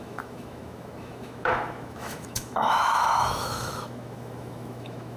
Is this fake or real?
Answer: fake